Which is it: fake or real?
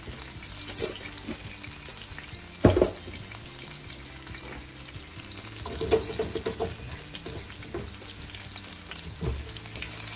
real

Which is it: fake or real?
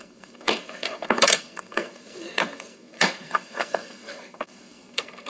fake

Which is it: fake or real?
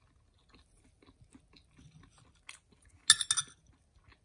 real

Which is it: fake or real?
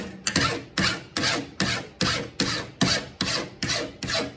real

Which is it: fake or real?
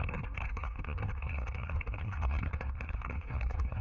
fake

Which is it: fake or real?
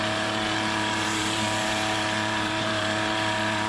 fake